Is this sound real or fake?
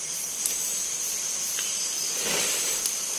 real